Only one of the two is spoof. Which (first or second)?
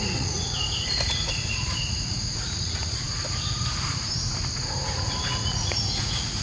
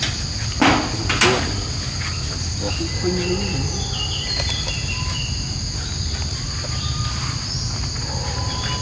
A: first